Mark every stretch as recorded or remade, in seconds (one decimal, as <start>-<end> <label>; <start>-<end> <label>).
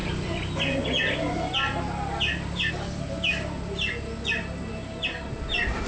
0.0-5.9 recorded